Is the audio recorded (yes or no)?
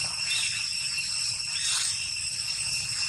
yes